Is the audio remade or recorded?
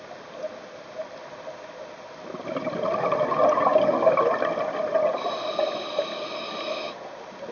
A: recorded